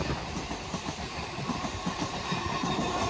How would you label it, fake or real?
fake